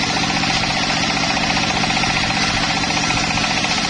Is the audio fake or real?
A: real